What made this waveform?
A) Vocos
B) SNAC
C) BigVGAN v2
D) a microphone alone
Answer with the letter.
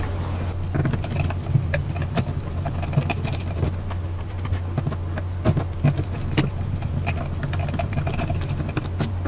D